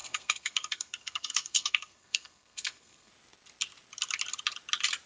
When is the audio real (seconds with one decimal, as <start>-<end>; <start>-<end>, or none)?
3.1-5.1